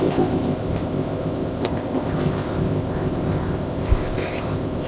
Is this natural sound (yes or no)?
no